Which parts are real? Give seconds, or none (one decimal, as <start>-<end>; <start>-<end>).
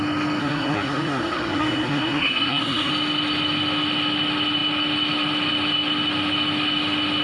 0.0-0.4; 2.9-7.2